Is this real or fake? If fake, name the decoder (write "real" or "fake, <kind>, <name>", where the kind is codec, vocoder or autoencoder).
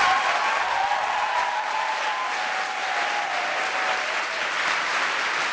real